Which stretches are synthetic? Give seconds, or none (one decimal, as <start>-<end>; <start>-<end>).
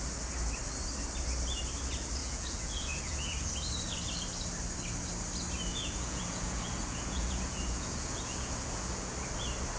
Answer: 2.2-3.5; 5.7-9.1